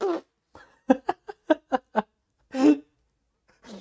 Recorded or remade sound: recorded